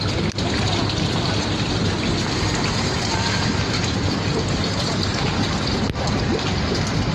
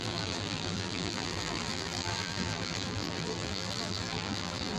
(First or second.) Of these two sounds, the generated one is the second